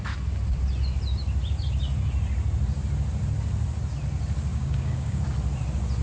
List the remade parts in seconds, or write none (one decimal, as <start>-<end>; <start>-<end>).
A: 4.5-5.2